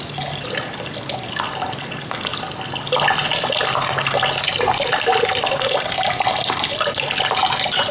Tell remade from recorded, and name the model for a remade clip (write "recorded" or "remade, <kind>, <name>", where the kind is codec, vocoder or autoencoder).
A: recorded